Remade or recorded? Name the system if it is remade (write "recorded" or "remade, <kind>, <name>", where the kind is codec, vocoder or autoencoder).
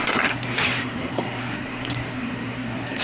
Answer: remade, codec, SNAC